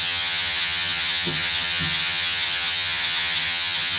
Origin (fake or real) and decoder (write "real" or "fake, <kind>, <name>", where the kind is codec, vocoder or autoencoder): fake, vocoder, HiFi-GAN